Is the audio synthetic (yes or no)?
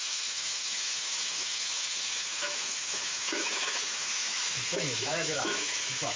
yes